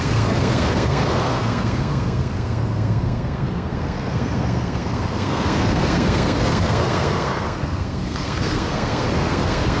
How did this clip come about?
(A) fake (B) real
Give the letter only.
A